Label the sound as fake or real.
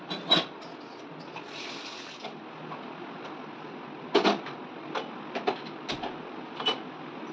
real